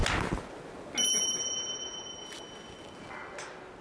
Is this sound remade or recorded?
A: recorded